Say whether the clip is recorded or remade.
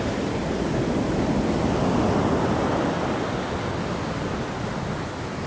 recorded